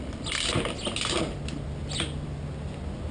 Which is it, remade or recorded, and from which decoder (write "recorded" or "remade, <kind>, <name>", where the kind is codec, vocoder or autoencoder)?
recorded